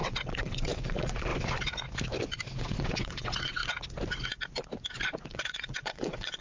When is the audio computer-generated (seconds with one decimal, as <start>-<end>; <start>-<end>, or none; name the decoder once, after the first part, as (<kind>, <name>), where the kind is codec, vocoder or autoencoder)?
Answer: 0.0-1.3 (vocoder, WaveNeXt); 2.6-3.6; 5.3-6.4